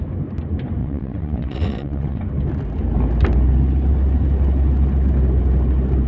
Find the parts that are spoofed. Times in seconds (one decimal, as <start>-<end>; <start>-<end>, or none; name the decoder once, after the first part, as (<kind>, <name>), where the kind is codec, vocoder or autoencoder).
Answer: 0.8-2.2 (vocoder, WaveNeXt)